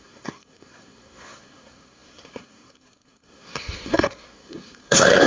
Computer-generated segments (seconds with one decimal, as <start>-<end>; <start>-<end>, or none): 0.0-5.3

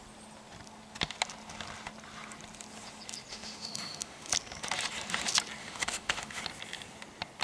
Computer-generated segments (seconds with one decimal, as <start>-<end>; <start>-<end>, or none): 3.3-4.3; 5.6-6.4

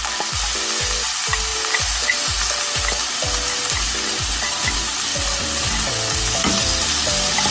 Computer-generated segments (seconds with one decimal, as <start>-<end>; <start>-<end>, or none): none

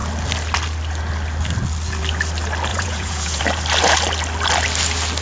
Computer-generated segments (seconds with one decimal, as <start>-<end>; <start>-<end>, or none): 2.7-3.4

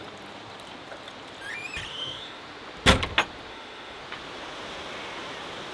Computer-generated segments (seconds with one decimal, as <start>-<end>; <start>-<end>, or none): 1.9-2.4; 3.5-4.0

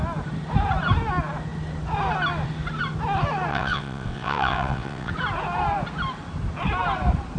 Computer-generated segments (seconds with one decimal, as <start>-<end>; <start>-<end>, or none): 3.5-5.1